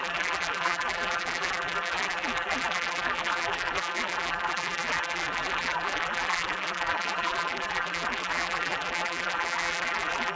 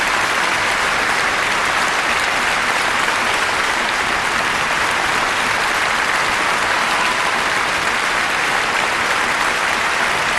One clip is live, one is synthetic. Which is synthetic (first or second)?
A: first